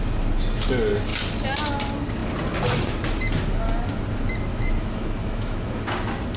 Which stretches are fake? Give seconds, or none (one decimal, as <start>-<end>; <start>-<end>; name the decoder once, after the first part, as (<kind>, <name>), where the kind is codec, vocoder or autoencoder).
4.5-5.8 (autoencoder, DAC-VAE)